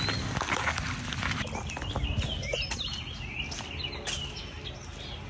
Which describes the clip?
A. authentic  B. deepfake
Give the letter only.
A